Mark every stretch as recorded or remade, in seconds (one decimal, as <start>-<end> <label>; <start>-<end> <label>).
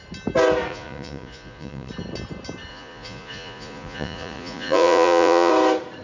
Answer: 0.0-0.7 recorded; 0.7-1.9 remade; 1.9-2.7 recorded; 2.7-5.5 remade; 5.5-6.0 recorded